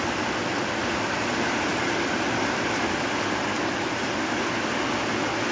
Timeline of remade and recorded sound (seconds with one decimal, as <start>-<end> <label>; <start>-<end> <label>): 0.0-5.5 recorded